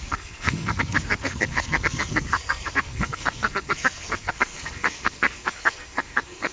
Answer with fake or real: fake